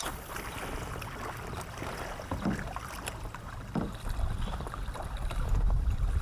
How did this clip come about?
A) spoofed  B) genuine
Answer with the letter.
A